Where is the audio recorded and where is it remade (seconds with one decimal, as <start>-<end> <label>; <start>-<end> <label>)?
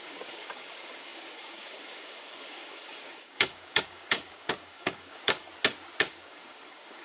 0.0-5.5 remade; 5.5-6.0 recorded; 6.0-7.0 remade